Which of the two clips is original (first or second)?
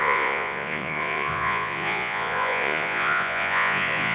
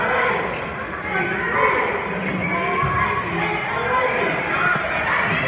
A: second